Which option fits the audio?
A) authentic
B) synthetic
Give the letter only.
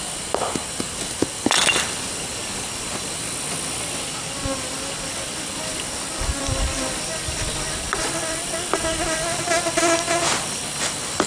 A